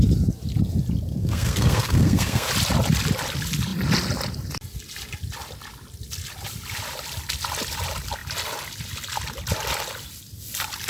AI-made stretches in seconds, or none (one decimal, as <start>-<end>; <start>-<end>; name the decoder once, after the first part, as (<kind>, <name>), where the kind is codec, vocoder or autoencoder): 1.1-2.5 (codec, SNAC)